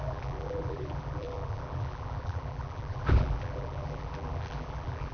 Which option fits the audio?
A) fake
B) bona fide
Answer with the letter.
A